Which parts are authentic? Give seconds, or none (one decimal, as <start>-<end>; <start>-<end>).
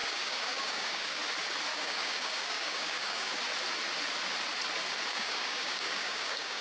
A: 1.2-1.7; 3.4-5.1